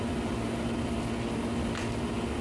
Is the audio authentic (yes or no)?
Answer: yes